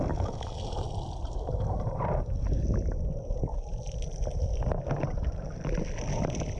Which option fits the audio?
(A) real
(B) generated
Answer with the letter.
A